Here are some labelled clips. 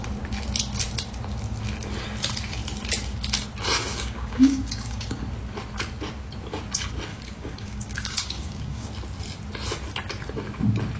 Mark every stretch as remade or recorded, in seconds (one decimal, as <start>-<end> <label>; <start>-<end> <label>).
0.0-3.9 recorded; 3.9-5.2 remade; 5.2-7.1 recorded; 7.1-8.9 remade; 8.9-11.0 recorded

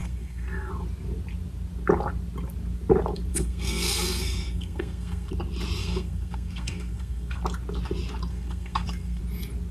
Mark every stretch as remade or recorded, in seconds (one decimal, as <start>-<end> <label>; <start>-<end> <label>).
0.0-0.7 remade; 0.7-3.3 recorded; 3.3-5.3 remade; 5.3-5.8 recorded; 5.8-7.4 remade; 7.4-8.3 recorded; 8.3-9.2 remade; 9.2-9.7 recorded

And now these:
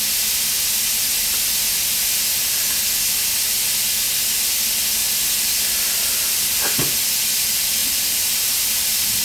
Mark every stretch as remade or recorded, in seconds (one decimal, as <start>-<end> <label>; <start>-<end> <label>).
0.0-9.2 recorded

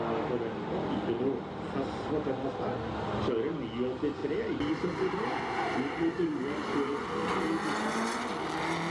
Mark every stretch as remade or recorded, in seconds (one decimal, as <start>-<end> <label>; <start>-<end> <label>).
0.0-8.9 recorded

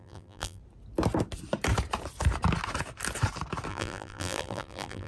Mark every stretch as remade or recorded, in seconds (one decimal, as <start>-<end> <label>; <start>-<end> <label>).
0.0-0.6 remade; 0.6-3.7 recorded; 3.7-5.1 remade

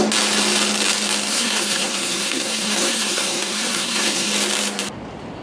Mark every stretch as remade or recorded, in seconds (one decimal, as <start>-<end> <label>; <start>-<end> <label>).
0.0-1.3 recorded; 1.3-4.3 remade; 4.3-5.4 recorded

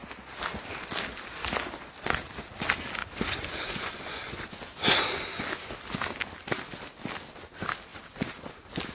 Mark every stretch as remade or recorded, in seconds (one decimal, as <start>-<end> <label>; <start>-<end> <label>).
0.0-1.4 recorded; 1.4-1.9 remade; 1.9-3.0 recorded; 3.0-5.4 remade; 5.4-8.9 recorded